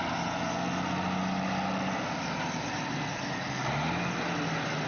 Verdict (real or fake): real